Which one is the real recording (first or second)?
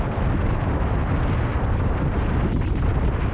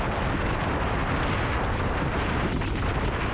second